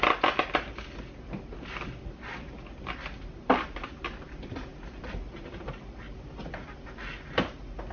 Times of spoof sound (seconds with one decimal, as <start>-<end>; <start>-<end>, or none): none